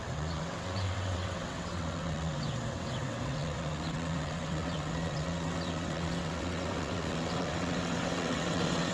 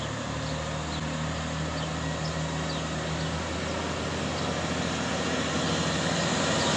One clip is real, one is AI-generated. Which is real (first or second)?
second